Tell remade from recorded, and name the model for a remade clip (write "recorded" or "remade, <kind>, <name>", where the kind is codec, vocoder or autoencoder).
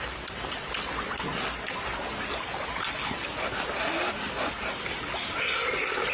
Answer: recorded